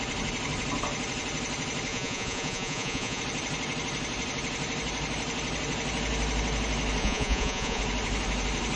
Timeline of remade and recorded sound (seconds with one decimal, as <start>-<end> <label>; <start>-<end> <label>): 0.0-1.9 recorded; 1.9-3.2 remade; 3.2-7.0 recorded; 7.0-7.8 remade; 7.8-8.8 recorded

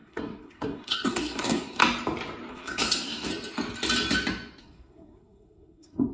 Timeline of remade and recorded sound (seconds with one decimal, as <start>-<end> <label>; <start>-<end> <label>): 0.0-1.8 remade; 1.8-2.5 recorded; 2.5-3.3 remade; 3.3-4.6 recorded; 4.6-6.1 remade

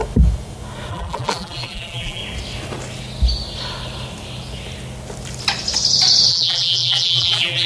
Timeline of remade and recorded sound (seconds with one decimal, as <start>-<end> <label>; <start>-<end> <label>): 0.0-0.9 recorded; 0.9-2.2 remade; 2.2-6.3 recorded; 6.3-7.7 remade

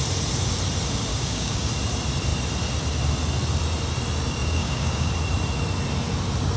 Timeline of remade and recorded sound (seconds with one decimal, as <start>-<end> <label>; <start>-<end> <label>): 0.0-1.1 recorded; 1.1-1.7 remade; 1.7-4.4 recorded; 4.4-5.1 remade; 5.1-6.6 recorded